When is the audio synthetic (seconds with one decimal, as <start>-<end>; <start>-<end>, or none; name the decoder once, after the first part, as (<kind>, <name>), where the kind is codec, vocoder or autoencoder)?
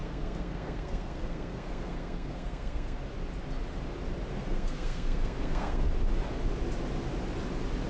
0.0-3.0 (codec, SNAC); 4.3-5.9